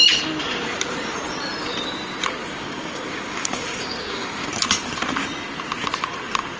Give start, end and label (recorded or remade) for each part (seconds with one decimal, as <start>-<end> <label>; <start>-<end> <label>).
0.0-2.4 recorded; 2.4-4.5 remade; 4.5-6.6 recorded